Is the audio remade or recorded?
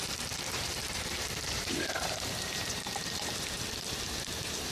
remade